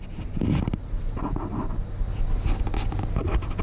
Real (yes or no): yes